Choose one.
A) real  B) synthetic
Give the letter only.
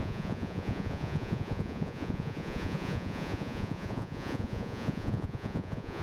B